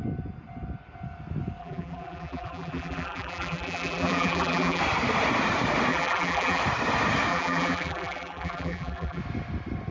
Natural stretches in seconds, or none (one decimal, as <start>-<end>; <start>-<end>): 0.0-1.6; 4.8-5.9; 6.6-7.3; 9.2-9.9